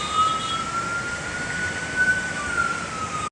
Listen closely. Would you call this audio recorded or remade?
recorded